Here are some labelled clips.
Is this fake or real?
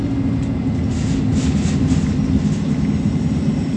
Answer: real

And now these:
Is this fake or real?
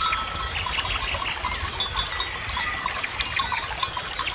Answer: real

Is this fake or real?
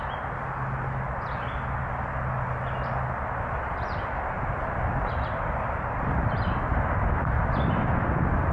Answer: real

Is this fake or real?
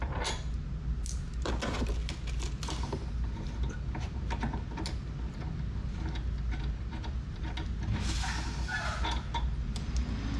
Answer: real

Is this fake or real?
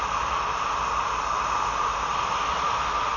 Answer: real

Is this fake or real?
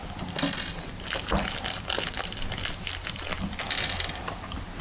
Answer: real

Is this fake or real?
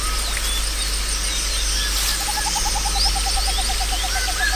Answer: real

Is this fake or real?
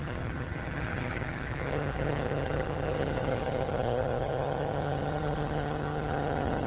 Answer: fake